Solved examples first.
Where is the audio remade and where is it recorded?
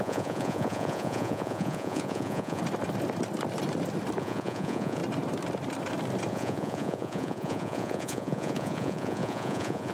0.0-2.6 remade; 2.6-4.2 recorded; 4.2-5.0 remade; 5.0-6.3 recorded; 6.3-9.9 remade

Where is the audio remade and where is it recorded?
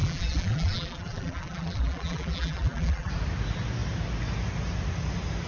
0.0-3.1 remade; 3.1-5.5 recorded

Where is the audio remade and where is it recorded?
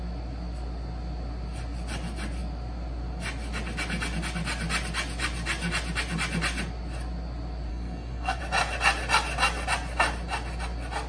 0.0-7.7 recorded; 7.7-8.4 remade; 8.4-11.1 recorded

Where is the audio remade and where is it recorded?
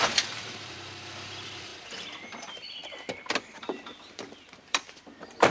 0.0-1.7 remade; 1.7-2.4 recorded; 2.4-2.8 remade; 2.8-3.6 recorded; 3.6-5.5 remade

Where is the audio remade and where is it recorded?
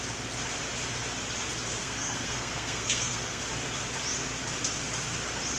0.0-1.8 recorded; 1.8-3.4 remade; 3.4-5.6 recorded